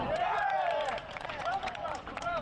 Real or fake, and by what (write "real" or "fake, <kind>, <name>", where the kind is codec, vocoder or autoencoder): fake, vocoder, Vocos